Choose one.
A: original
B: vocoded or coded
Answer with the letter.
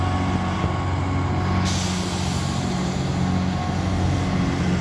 A